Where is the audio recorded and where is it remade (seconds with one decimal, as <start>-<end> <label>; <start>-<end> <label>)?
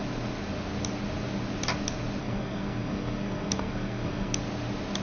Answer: 0.0-2.2 recorded; 2.2-4.4 remade; 4.4-5.0 recorded